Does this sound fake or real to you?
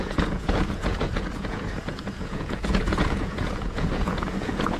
fake